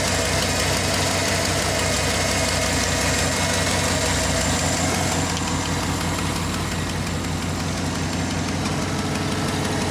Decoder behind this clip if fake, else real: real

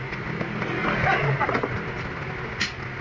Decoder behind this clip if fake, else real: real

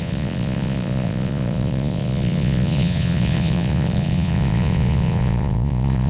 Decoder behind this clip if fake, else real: fake, vocoder, Vocos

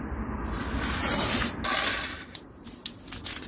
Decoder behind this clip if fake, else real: fake, vocoder, BigVGAN v2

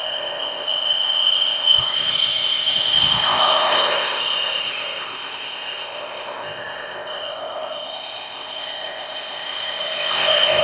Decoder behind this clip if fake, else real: fake, codec, ZipCodec